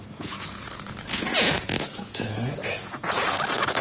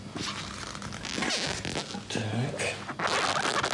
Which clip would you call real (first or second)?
second